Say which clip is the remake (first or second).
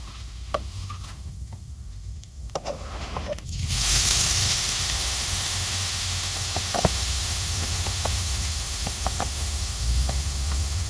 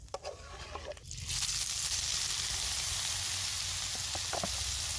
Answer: first